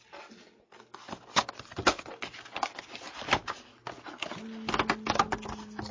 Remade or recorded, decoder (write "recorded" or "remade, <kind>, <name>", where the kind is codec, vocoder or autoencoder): recorded